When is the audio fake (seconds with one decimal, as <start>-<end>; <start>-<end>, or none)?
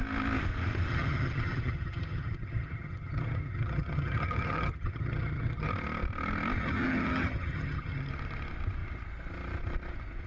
0.9-5.7; 6.6-8.1